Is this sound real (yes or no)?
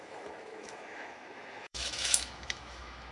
no